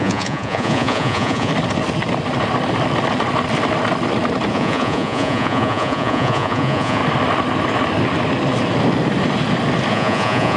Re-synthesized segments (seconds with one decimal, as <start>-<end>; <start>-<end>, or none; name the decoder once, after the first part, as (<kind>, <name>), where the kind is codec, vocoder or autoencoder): 0.0-1.5 (vocoder, Vocos); 4.5-7.0; 9.9-10.6

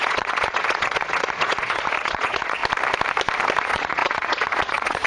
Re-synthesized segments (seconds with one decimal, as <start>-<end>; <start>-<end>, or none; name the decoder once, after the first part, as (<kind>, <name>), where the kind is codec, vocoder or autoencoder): 0.0-2.6 (vocoder, Vocos); 3.6-5.1

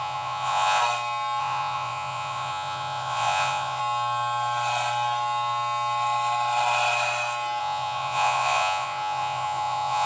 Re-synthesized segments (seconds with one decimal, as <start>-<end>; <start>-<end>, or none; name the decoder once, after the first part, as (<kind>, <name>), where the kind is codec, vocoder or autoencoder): 0.0-0.8 (vocoder, Vocos); 1.4-3.8; 7.6-10.1

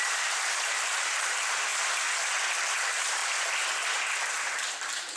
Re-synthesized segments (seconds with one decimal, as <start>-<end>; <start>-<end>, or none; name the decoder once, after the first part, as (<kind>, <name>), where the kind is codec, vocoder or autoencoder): 0.0-1.7 (vocoder, BigVGAN v2); 2.6-3.2; 4.3-5.2

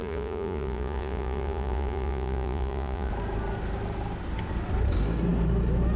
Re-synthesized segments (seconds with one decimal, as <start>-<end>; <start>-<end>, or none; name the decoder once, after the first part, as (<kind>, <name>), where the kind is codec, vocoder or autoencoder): 0.0-3.1 (vocoder, Vocos)

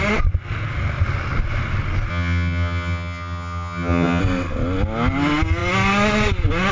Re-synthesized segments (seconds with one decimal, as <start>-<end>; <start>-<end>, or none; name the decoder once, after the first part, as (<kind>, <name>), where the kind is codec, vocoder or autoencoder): 2.1-4.2 (vocoder, HiFi-GAN)